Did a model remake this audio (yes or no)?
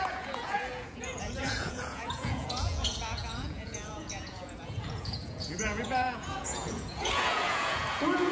yes